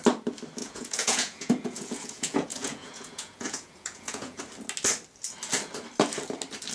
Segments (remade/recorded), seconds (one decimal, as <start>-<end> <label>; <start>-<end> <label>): 0.0-0.6 recorded; 0.6-4.4 remade; 4.4-6.7 recorded